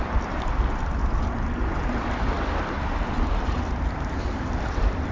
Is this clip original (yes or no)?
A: yes